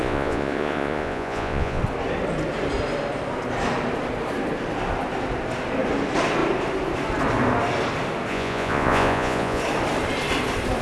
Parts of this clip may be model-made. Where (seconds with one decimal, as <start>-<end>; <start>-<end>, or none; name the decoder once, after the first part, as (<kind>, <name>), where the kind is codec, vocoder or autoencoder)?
0.0-1.8 (vocoder, Vocos); 8.3-9.6